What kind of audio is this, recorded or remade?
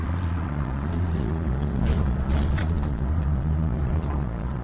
remade